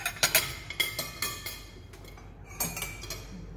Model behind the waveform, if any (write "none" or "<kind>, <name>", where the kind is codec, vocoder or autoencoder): none